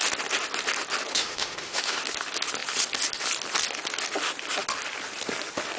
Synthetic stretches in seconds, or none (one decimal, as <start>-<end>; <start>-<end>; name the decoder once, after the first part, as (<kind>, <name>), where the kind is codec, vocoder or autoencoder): 1.1-2.0 (autoencoder, DAC-VAE)